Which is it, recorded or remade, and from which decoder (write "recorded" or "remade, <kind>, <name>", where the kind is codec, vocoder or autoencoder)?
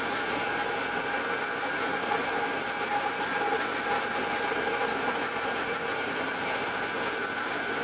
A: recorded